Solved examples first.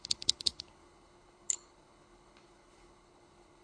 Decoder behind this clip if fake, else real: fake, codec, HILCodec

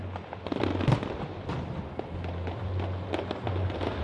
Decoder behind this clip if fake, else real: real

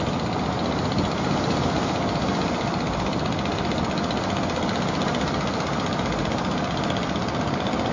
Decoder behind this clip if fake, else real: real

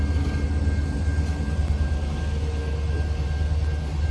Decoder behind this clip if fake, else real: real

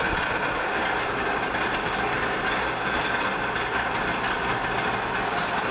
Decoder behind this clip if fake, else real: real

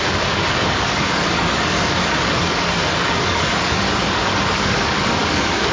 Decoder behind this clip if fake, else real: fake, codec, DAC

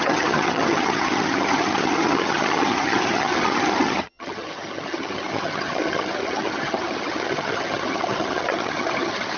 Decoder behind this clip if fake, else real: fake, vocoder, HiFi-GAN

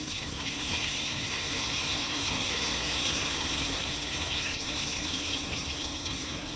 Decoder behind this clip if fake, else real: fake, codec, SNAC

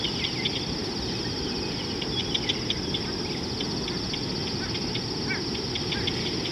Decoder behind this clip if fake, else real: real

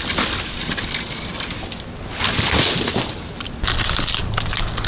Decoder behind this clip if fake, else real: real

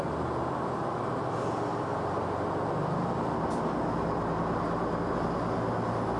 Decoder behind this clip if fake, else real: real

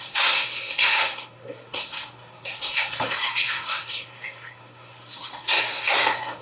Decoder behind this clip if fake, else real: fake, codec, SNAC